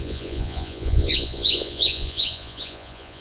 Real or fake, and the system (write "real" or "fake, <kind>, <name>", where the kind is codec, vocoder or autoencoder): fake, vocoder, Vocos